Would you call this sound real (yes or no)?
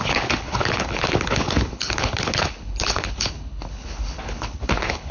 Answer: no